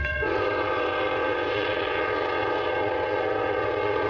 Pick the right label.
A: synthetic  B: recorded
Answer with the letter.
A